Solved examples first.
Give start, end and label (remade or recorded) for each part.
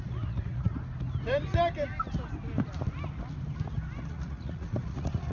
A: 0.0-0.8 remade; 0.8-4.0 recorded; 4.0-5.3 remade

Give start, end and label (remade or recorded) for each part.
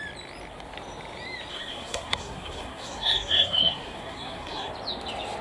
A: 0.0-1.5 recorded; 1.5-4.7 remade; 4.7-5.4 recorded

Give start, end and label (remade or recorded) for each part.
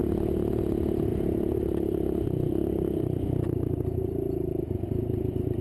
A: 0.0-0.6 remade; 0.6-1.1 recorded; 1.1-4.5 remade; 4.5-5.6 recorded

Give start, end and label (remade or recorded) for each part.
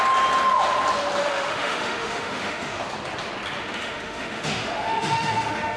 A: 0.0-1.2 recorded; 1.2-2.8 remade; 2.8-3.6 recorded; 3.6-5.8 remade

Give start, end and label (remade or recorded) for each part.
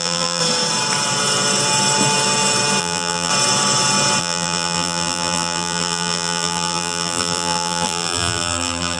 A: 0.0-0.4 remade; 0.4-2.8 recorded; 2.8-3.3 remade; 3.3-4.2 recorded; 4.2-9.0 remade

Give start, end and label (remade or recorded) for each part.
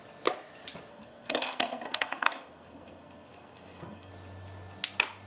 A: 0.0-0.9 recorded; 0.9-4.1 remade; 4.1-5.3 recorded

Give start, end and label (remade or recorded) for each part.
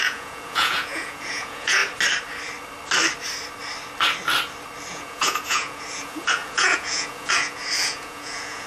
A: 0.0-1.8 remade; 1.8-4.9 recorded; 4.9-8.7 remade